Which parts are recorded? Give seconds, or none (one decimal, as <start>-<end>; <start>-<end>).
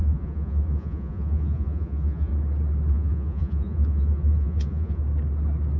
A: 2.3-2.9; 5.0-5.8